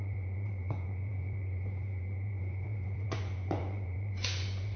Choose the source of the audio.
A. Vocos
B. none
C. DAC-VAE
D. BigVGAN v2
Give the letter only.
A